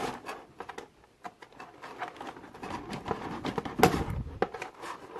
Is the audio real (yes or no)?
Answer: yes